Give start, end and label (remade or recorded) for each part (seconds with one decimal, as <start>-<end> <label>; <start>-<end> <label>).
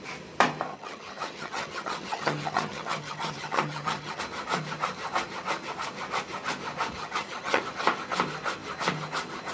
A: 0.0-0.7 recorded; 0.7-4.2 remade; 4.2-7.0 recorded; 7.0-7.6 remade; 7.6-9.5 recorded